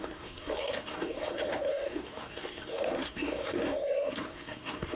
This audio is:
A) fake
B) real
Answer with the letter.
A